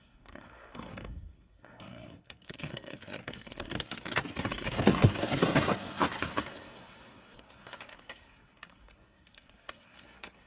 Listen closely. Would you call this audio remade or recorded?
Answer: remade